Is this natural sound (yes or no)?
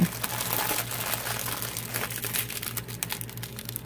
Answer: yes